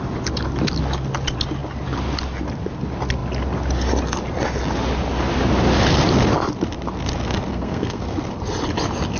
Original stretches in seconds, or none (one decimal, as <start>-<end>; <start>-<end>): 0.0-7.5; 8.0-9.2

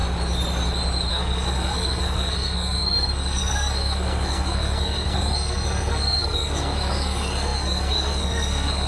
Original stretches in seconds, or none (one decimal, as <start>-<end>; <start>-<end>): 0.0-1.1

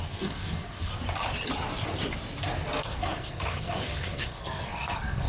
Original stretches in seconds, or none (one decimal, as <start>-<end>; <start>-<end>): 0.9-2.8

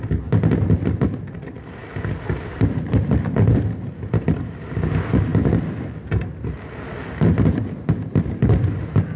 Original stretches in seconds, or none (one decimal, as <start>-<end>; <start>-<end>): 0.0-9.2

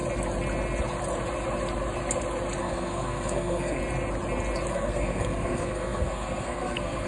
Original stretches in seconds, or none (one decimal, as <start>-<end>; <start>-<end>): 0.0-2.6; 3.8-4.7

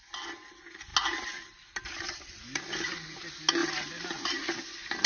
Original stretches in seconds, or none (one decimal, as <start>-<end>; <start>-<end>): 0.0-5.1

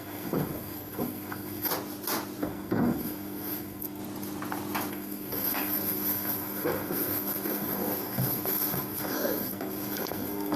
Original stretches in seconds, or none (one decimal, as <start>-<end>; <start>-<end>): 1.7-2.4; 4.0-4.9